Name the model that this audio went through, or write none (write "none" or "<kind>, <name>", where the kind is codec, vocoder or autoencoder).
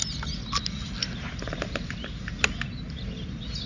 none